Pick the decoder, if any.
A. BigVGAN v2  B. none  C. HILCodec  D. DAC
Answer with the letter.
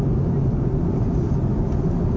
B